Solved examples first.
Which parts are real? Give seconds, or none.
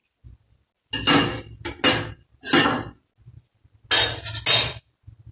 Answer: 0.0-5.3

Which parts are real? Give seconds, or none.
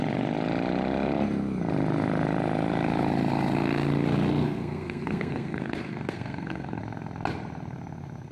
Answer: 0.0-4.4; 6.8-8.3